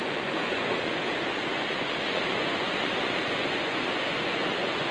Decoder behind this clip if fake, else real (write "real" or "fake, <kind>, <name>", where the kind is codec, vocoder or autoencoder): fake, vocoder, Vocos